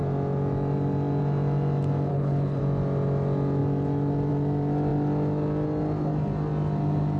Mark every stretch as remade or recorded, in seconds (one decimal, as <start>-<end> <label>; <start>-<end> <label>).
0.0-2.1 recorded; 2.1-2.6 remade; 2.6-7.2 recorded